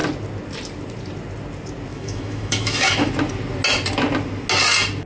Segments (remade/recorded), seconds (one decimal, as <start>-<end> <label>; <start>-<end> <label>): 0.0-1.9 recorded; 1.9-3.1 remade; 3.1-5.1 recorded